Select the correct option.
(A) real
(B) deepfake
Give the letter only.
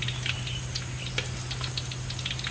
A